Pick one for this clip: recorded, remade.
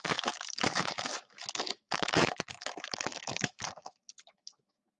remade